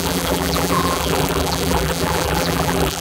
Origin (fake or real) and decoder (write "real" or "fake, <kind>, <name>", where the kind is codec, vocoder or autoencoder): fake, vocoder, BigVGAN v2